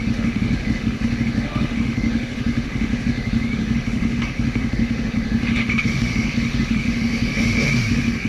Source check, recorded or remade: remade